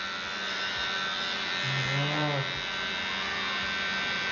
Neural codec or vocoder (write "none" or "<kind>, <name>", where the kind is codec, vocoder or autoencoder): none